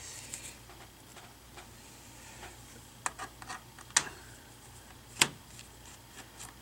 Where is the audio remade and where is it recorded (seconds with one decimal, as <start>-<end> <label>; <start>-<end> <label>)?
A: 0.0-6.6 recorded